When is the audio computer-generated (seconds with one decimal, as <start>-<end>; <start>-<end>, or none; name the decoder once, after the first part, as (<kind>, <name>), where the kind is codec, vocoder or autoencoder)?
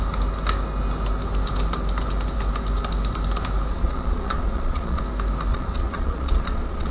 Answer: 3.7-5.0 (vocoder, Vocos); 5.5-6.9